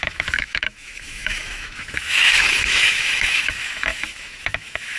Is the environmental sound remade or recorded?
remade